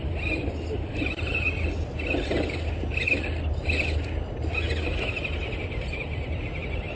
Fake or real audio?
real